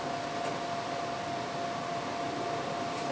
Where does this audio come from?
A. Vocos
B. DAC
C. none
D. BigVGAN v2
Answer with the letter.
C